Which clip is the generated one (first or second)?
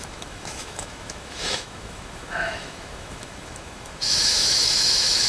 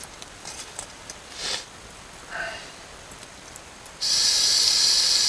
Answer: first